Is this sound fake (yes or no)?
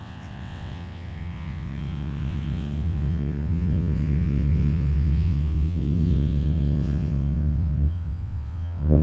yes